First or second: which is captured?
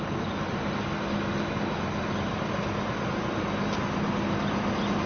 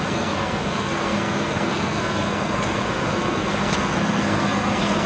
first